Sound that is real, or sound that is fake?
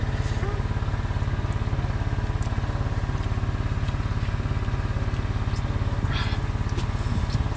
real